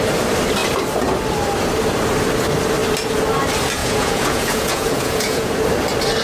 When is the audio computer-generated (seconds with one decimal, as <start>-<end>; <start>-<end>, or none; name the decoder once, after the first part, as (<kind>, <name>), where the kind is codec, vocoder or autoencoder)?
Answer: 3.8-5.5 (vocoder, Vocos)